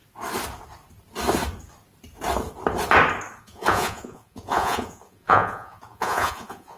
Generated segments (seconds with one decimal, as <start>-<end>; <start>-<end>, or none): 3.4-6.8